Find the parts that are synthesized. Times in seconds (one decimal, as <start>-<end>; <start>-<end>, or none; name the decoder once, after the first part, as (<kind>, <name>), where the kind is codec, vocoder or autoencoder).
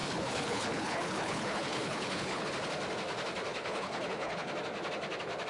0.0-2.5 (codec, HILCodec); 3.5-4.5